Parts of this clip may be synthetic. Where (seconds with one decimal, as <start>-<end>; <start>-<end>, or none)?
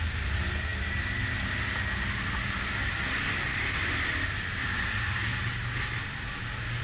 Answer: 0.0-0.7; 3.8-5.3